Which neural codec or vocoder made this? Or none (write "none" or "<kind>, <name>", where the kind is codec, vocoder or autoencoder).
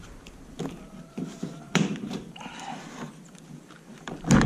vocoder, BigVGAN v2